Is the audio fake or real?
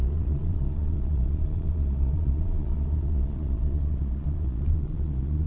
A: fake